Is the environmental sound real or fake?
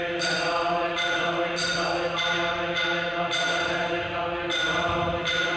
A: real